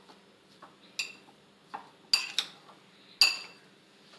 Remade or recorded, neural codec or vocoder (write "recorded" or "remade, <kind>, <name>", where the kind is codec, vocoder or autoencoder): recorded